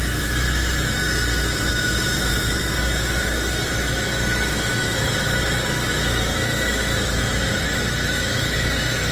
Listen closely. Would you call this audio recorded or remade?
remade